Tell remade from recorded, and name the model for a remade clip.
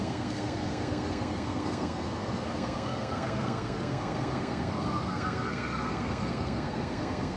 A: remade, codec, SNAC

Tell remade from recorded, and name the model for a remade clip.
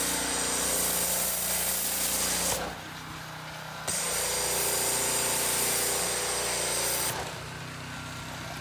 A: recorded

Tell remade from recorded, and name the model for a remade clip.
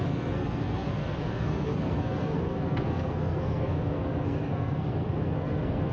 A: remade, codec, SNAC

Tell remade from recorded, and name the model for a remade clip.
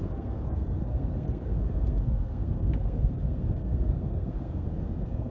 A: remade, codec, SNAC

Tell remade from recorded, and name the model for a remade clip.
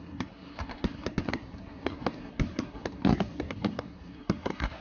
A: remade, codec, SNAC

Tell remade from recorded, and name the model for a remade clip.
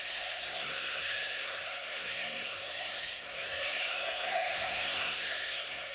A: remade, codec, SNAC